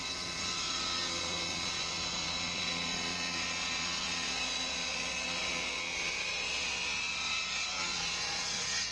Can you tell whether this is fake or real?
fake